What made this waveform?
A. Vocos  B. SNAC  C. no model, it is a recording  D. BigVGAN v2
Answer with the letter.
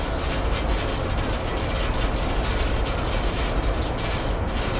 C